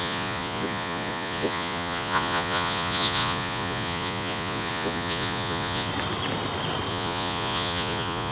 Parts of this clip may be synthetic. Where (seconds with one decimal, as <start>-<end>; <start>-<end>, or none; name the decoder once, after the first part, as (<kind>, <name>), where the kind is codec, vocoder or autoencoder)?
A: 0.0-5.9 (vocoder, Vocos); 6.9-8.3